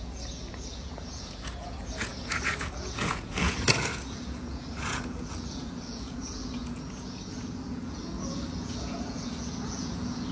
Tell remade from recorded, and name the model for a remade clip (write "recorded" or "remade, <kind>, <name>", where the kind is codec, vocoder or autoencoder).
remade, vocoder, Vocos